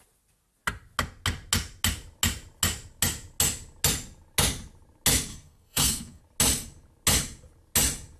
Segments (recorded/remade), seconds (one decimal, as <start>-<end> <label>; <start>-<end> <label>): 0.0-5.3 recorded; 5.3-6.2 remade; 6.2-8.2 recorded